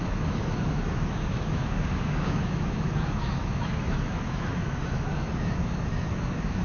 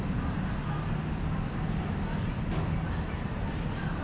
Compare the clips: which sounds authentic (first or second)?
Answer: second